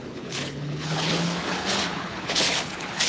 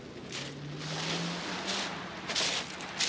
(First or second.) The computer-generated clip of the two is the first